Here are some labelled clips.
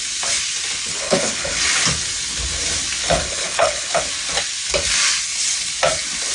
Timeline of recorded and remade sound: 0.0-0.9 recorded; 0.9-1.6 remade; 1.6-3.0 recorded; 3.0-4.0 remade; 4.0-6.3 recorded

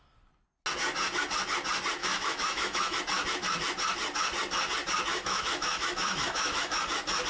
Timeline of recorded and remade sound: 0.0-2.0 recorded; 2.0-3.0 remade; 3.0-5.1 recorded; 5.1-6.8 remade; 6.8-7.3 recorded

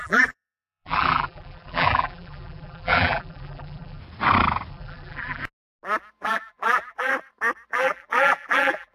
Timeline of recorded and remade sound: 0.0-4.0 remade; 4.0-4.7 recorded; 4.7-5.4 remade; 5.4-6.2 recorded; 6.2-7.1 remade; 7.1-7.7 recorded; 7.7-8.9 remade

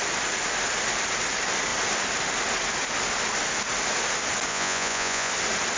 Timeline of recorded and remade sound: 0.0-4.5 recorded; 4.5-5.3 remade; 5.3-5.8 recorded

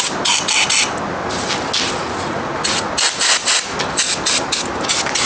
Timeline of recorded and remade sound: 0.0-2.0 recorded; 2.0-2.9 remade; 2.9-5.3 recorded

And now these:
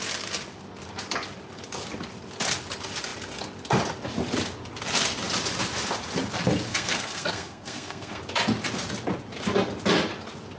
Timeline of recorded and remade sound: 0.0-6.7 recorded; 6.7-8.2 remade; 8.2-10.6 recorded